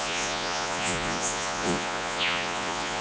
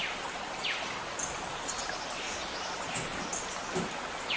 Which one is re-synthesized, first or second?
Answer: first